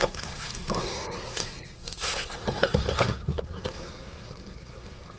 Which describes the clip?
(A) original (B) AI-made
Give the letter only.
B